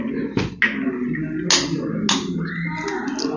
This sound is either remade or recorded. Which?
recorded